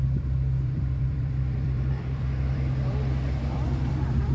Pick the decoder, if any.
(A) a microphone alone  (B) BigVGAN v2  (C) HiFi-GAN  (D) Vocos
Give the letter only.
B